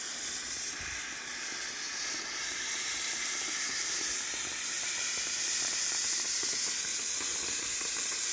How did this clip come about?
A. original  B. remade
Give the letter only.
B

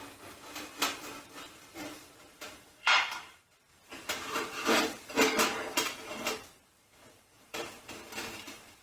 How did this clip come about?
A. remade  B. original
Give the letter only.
A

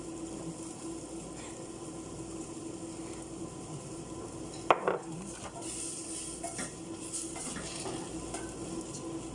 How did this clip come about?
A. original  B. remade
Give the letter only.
A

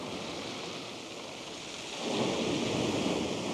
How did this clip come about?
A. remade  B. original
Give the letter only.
B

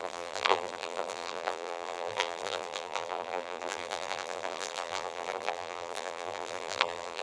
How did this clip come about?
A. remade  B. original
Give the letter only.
A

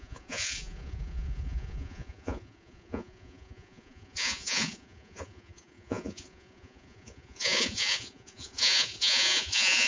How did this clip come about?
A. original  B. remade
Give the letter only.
B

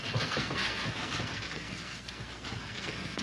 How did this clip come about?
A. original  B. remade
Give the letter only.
B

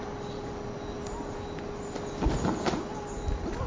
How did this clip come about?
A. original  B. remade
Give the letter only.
A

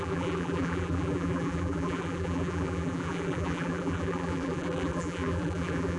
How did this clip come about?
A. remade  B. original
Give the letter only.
A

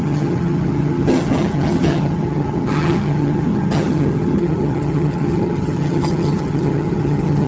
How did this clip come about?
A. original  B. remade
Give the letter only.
B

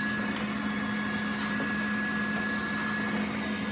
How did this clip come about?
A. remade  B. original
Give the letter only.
B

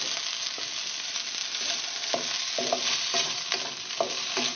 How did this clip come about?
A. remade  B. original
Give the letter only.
B